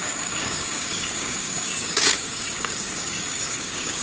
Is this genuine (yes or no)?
no